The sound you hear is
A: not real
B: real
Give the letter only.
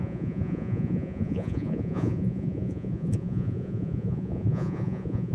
A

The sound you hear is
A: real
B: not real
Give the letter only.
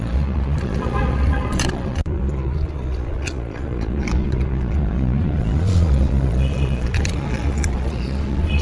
B